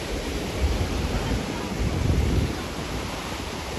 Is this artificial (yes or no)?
yes